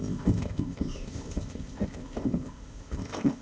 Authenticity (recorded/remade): remade